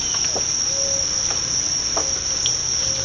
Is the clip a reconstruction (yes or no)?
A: no